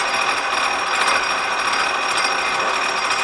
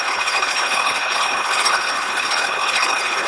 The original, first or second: first